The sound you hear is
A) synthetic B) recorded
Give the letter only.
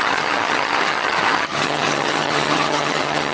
A